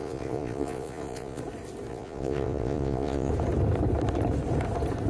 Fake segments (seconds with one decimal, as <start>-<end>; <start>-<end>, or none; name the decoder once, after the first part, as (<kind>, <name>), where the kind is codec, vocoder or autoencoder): 0.0-1.4 (vocoder, Vocos); 1.9-3.3